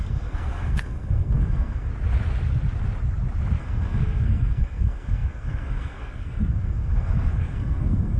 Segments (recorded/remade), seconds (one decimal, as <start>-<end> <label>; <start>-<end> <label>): 0.0-1.9 remade; 1.9-3.6 recorded; 3.6-8.2 remade